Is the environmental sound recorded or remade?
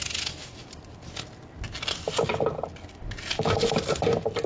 recorded